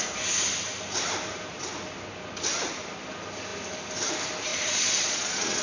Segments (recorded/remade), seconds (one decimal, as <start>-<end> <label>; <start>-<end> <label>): 0.0-4.5 recorded; 4.5-5.6 remade